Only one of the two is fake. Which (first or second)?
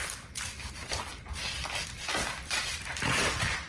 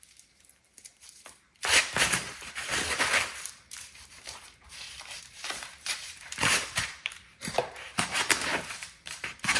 second